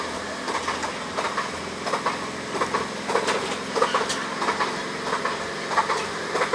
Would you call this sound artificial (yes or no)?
no